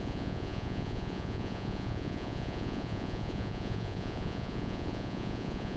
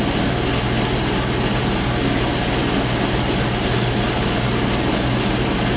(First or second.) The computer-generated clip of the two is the first